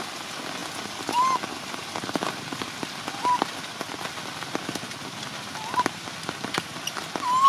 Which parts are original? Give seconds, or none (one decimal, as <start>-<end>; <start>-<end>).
0.0-7.5